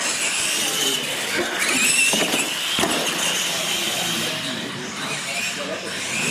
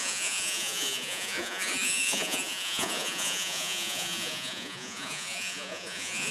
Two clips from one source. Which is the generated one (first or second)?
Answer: second